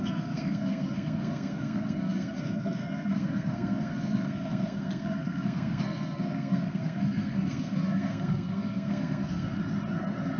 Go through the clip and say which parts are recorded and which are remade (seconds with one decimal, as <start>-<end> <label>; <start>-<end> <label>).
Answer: 0.0-9.6 remade; 9.6-10.4 recorded